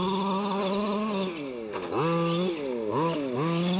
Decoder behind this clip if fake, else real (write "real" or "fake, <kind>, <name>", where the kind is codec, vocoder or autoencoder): real